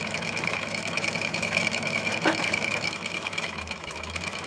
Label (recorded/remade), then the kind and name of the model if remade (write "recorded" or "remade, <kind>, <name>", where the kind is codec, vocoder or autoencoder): remade, autoencoder, DAC-VAE